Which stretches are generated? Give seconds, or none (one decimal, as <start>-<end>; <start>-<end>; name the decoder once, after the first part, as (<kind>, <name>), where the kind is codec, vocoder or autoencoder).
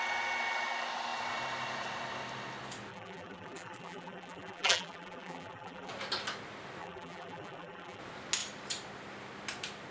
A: 2.9-5.9 (vocoder, BigVGAN v2); 6.8-8.0